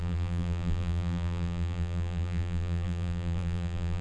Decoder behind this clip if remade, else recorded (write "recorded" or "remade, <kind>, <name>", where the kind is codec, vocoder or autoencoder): remade, vocoder, BigVGAN v2